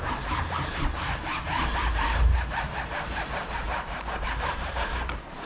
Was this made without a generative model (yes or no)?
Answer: no